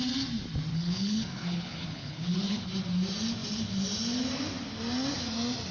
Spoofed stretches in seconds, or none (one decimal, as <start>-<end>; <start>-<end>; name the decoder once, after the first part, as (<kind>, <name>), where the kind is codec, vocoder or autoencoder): 0.7-2.7 (codec, HILCodec)